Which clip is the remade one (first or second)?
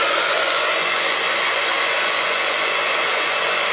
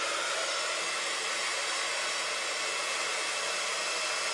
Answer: first